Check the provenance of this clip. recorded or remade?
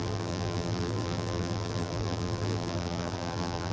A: remade